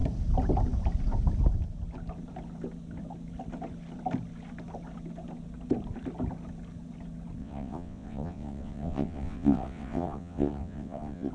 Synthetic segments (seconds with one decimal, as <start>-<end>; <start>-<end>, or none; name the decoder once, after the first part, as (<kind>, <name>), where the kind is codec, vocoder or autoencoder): 7.4-11.3 (vocoder, WaveNeXt)